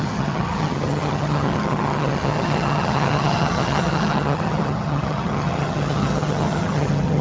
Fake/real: fake